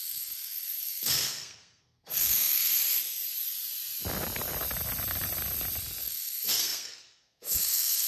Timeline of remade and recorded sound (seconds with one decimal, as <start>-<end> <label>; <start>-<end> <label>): 0.0-2.7 remade; 2.7-6.0 recorded; 6.0-8.1 remade